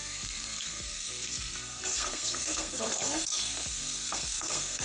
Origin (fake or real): fake